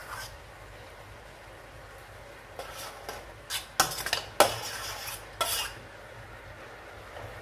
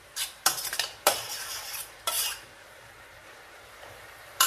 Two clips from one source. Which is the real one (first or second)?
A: first